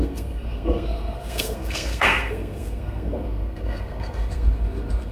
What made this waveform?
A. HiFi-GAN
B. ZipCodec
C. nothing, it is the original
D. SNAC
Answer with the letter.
D